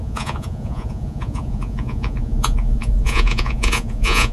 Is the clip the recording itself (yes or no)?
no